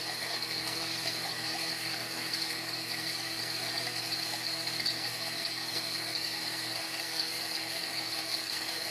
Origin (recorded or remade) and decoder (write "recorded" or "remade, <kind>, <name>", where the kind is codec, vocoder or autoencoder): remade, codec, SNAC